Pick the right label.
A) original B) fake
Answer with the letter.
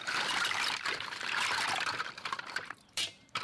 B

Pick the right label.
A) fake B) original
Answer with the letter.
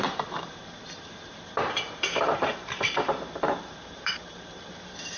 A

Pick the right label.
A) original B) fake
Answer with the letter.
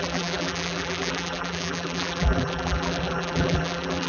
B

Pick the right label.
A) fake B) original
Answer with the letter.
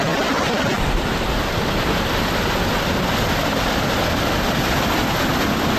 B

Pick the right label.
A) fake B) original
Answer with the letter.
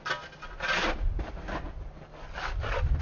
B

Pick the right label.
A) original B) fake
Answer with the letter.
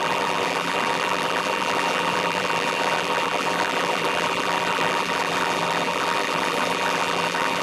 B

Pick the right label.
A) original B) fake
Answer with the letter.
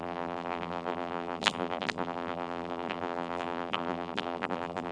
B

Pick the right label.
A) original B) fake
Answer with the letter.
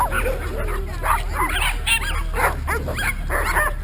A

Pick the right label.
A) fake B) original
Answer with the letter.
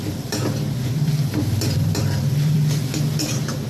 A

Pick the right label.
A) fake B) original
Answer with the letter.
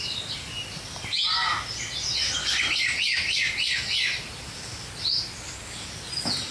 B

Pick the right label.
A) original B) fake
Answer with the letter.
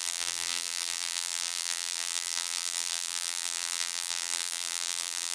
B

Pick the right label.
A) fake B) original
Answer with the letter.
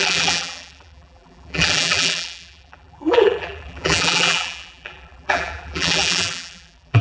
A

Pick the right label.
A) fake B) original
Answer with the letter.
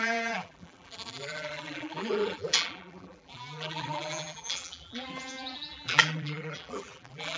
A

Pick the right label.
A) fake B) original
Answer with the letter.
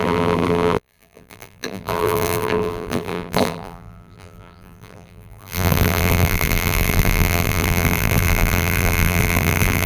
A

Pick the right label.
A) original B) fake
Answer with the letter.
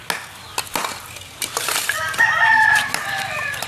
A